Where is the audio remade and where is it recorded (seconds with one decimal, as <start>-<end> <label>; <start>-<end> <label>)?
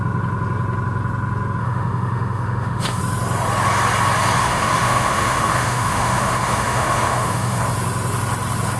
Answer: 0.0-1.6 recorded; 1.6-3.0 remade; 3.0-4.4 recorded; 4.4-7.6 remade; 7.6-8.8 recorded